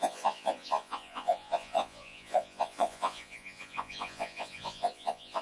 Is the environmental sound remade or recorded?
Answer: remade